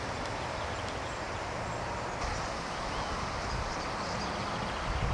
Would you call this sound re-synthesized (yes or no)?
yes